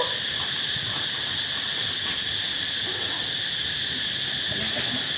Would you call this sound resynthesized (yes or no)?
no